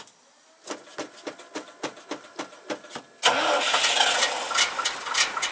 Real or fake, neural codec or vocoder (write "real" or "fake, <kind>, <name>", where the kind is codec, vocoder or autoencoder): real